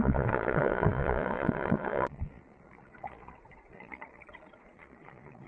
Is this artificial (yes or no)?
yes